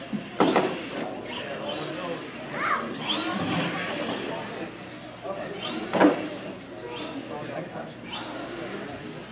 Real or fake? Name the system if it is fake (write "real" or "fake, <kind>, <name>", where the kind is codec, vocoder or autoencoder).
real